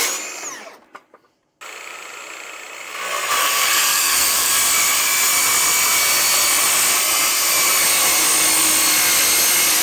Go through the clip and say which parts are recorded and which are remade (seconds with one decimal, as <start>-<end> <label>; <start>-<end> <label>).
0.0-3.4 recorded; 3.4-4.5 remade; 4.5-9.8 recorded